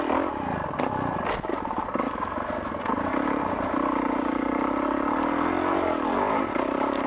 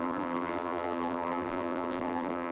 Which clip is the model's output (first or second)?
second